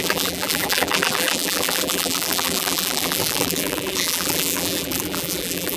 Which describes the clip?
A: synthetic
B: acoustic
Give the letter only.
A